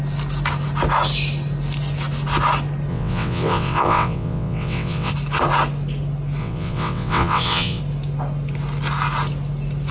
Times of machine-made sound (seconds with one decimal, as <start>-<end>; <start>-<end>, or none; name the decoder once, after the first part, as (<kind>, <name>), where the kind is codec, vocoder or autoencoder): 2.9-5.1 (vocoder, WaveNeXt); 6.4-7.8